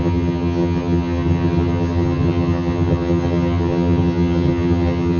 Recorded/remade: remade